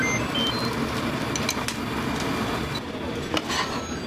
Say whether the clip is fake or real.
real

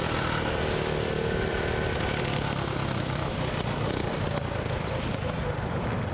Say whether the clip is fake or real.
real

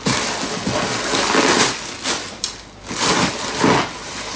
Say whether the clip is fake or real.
real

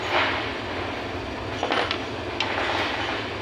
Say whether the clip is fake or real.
real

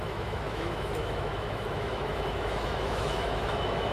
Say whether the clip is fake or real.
fake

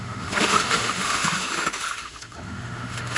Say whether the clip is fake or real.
fake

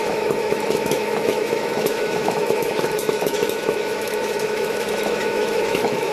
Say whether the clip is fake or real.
fake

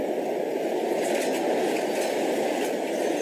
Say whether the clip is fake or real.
real